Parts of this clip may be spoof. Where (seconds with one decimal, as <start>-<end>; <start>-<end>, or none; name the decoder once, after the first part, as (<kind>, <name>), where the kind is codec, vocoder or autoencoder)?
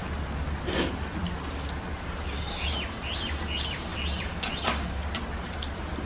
3.9-5.2 (vocoder, BigVGAN v2)